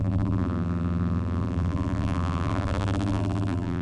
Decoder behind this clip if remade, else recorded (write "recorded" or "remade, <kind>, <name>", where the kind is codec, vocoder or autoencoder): remade, vocoder, BigVGAN v2